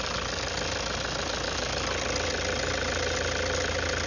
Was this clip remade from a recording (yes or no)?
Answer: no